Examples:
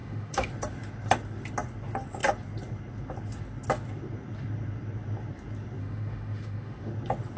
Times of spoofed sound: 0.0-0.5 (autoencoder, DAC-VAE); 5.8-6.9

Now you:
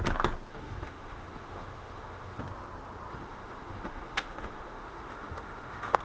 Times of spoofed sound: 0.5-2.4 (autoencoder, DAC-VAE); 3.1-6.0

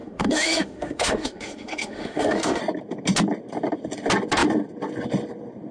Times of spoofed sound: 0.0-2.6 (autoencoder, DAC-VAE)

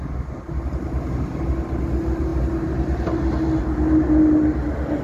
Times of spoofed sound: none

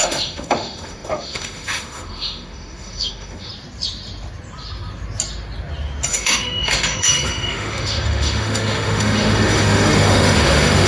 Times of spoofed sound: 0.0-3.5 (autoencoder, DAC-VAE); 6.1-10.9